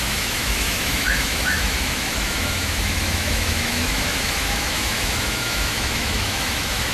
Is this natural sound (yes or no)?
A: no